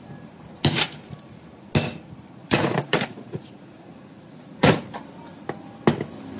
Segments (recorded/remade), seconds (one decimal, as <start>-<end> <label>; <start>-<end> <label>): 0.0-2.4 recorded; 2.4-4.8 remade; 4.8-6.4 recorded